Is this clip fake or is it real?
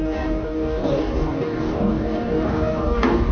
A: fake